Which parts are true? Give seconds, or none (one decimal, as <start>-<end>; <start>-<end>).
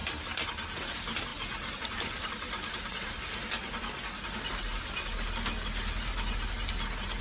0.0-1.3; 3.2-7.2